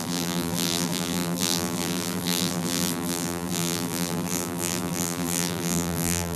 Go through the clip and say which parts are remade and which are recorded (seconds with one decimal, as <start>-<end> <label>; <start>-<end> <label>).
0.0-6.4 remade

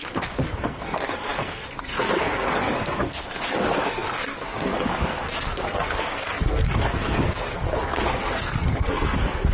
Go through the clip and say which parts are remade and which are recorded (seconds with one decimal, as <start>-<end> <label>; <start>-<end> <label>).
0.0-9.5 remade

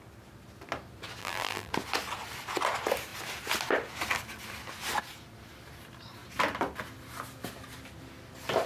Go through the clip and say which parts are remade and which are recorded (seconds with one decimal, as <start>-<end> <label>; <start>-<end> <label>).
0.0-1.2 recorded; 1.2-1.7 remade; 1.7-8.7 recorded

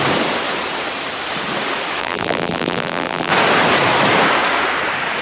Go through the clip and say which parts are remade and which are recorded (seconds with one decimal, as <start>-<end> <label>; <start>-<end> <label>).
0.0-2.0 recorded; 2.0-3.3 remade; 3.3-5.2 recorded

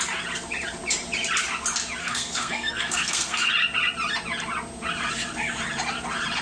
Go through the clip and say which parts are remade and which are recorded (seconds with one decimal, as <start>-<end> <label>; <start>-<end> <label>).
0.0-2.0 recorded; 2.0-3.5 remade; 3.5-6.4 recorded

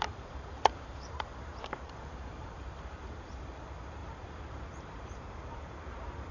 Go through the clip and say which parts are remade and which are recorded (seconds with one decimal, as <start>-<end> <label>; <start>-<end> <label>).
0.0-6.3 remade

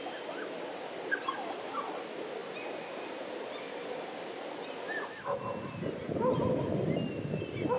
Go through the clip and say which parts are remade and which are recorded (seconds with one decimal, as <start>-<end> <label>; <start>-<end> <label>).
0.0-7.8 recorded